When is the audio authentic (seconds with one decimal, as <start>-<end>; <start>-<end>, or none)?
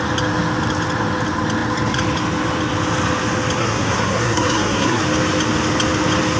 0.0-3.6; 5.0-6.4